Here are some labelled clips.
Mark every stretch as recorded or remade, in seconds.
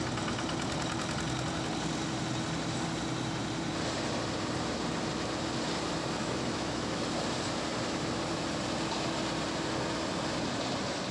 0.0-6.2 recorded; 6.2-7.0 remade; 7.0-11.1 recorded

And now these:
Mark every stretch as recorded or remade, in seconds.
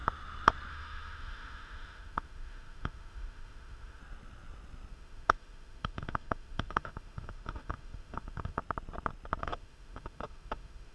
0.0-0.7 recorded; 0.7-4.0 remade; 4.0-4.9 recorded; 4.9-8.6 remade; 8.6-9.4 recorded; 9.4-10.9 remade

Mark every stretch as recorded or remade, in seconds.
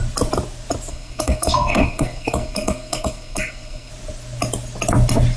0.0-0.9 recorded; 0.9-3.9 remade; 3.9-5.4 recorded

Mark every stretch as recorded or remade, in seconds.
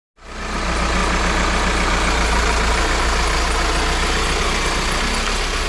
0.0-5.7 recorded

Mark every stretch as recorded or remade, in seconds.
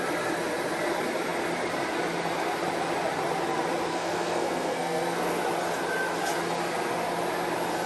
0.0-3.9 recorded; 3.9-5.4 remade; 5.4-7.9 recorded